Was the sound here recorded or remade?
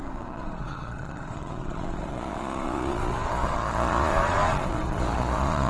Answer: remade